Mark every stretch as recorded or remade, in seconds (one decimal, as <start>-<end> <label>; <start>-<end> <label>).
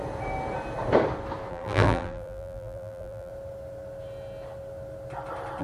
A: 0.0-1.5 recorded; 1.5-3.3 remade; 3.3-5.6 recorded